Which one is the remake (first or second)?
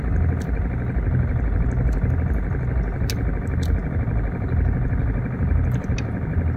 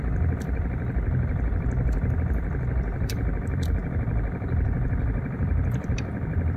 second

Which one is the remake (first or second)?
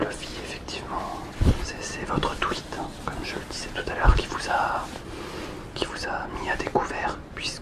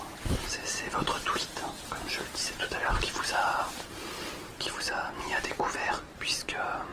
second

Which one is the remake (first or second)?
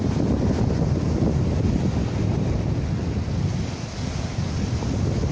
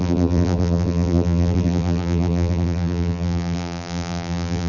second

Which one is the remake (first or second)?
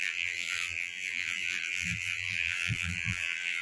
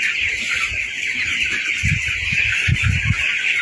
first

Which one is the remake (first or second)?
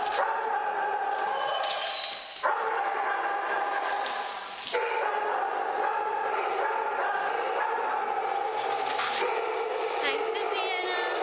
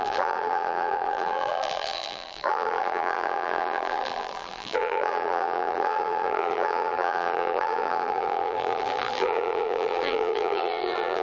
second